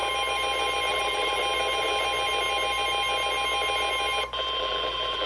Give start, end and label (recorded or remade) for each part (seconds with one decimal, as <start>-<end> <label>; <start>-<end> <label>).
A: 0.0-0.9 recorded; 0.9-1.4 remade; 1.4-4.6 recorded; 4.6-5.3 remade